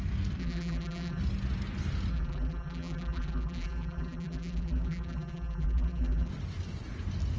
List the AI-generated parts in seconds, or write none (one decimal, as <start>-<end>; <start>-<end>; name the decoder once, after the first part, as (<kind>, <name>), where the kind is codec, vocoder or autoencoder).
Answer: 0.4-1.2 (vocoder, BigVGAN v2); 2.1-6.3